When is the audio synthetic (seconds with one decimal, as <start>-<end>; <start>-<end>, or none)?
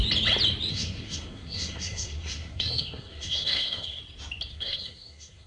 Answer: 0.7-4.0; 4.5-5.5